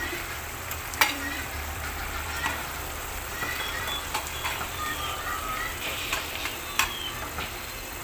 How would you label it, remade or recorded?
remade